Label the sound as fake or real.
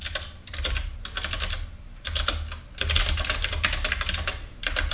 real